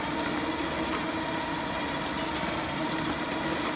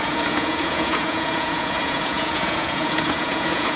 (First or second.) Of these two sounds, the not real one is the second